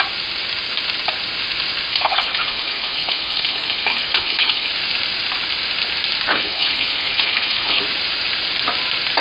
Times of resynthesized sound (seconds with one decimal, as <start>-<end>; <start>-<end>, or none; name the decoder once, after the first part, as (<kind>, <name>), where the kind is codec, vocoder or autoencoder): 1.9-4.7 (codec, HILCodec); 6.3-7.8